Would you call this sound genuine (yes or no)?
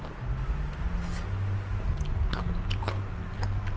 yes